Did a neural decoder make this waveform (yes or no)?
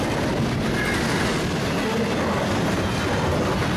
no